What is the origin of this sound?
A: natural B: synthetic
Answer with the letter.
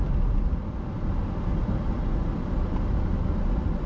A